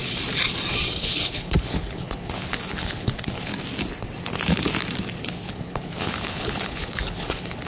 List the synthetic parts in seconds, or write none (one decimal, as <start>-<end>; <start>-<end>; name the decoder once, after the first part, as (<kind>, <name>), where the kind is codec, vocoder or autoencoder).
1.0-3.5 (codec, HILCodec); 5.2-7.7